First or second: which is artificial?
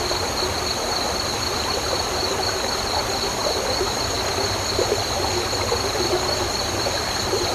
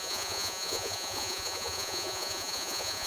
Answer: second